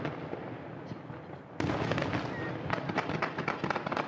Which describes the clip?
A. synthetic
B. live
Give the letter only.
B